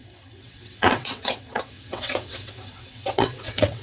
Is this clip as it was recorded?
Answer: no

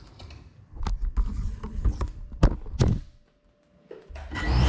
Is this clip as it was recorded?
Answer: yes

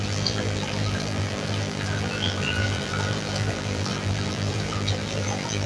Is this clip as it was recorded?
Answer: no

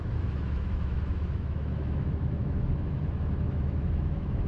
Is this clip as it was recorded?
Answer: no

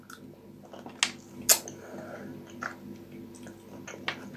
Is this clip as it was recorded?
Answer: yes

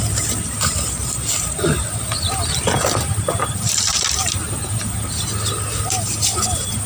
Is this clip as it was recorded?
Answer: yes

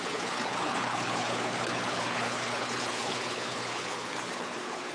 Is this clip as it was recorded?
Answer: no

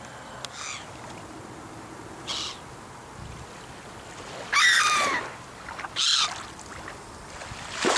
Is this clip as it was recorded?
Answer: yes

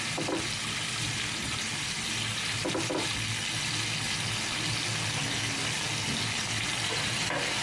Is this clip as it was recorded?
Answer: yes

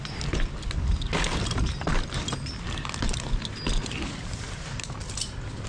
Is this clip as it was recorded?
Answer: yes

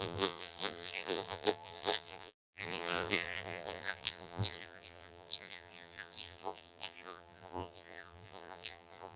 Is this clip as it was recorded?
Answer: no